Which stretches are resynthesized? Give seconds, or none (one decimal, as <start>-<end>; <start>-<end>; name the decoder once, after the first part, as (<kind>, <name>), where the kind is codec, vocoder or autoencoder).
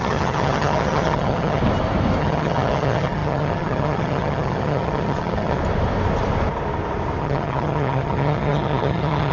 0.0-1.6 (vocoder, HiFi-GAN); 2.2-5.6; 7.2-9.3